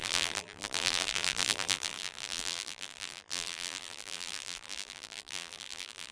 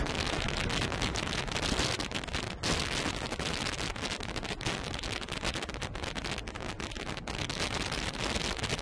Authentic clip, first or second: second